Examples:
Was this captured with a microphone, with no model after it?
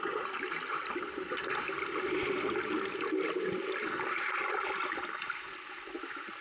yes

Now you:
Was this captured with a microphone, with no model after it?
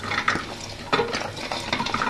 yes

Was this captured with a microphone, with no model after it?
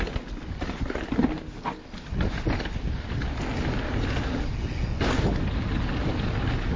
yes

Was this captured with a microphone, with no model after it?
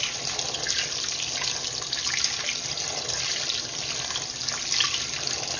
yes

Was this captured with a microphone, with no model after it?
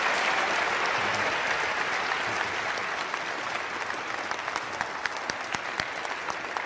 yes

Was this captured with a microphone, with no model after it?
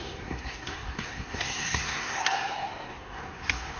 no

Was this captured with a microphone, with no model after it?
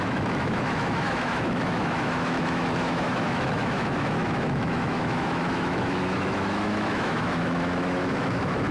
no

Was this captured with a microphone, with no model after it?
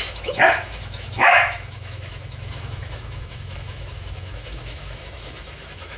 no